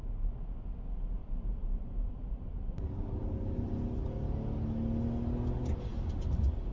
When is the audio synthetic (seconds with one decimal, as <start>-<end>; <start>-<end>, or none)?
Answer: 1.2-3.7